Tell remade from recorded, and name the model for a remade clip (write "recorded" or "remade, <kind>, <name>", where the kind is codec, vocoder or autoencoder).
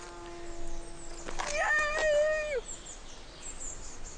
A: recorded